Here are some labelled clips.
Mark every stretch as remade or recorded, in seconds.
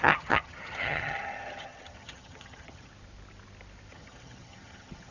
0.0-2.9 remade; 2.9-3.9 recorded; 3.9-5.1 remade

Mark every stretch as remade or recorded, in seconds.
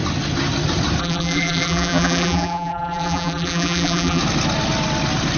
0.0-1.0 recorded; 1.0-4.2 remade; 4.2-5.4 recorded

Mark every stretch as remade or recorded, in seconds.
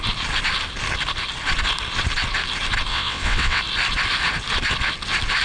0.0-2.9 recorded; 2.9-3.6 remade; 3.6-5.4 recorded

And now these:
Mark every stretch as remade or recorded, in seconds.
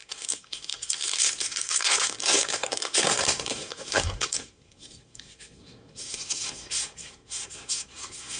0.0-8.4 remade